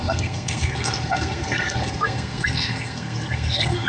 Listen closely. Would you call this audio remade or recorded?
remade